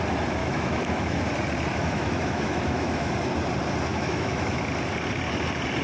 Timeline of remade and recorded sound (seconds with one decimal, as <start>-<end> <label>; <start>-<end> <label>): 0.0-0.4 recorded; 0.4-1.2 remade; 1.2-1.7 recorded; 1.7-3.1 remade; 3.1-3.9 recorded; 3.9-4.6 remade; 4.6-5.8 recorded